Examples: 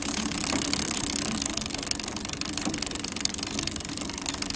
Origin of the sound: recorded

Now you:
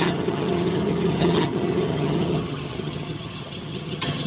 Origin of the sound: remade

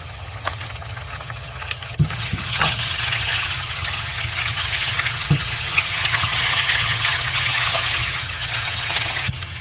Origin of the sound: remade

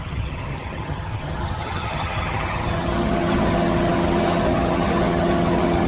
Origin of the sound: remade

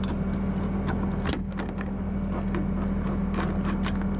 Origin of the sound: recorded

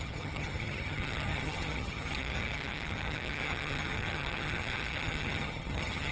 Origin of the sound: remade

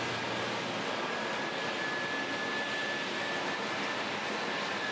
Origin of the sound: recorded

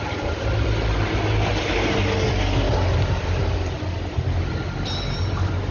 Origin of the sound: recorded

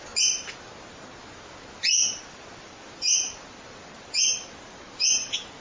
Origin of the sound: recorded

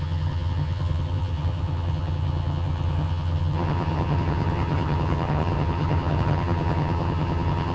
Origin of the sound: remade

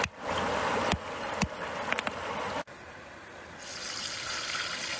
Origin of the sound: recorded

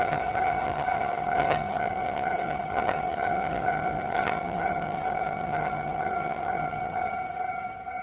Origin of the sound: remade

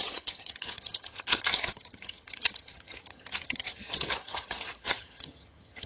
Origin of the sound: remade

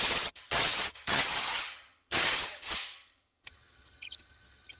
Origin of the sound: remade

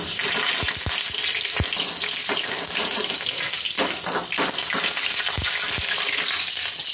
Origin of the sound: recorded